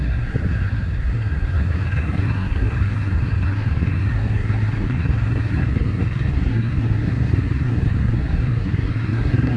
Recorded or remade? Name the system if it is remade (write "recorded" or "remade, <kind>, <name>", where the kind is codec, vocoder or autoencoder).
remade, codec, SNAC